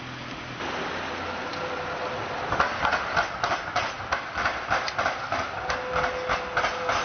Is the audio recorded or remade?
recorded